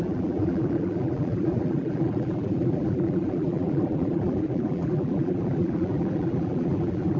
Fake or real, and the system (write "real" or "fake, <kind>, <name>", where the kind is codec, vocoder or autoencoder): fake, vocoder, BigVGAN v2